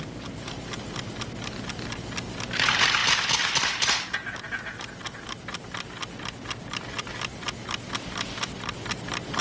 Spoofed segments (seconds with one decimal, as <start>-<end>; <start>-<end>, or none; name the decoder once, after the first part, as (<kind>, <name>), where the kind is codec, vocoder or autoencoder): none